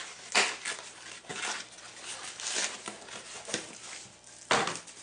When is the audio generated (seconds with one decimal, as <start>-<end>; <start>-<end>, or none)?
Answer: none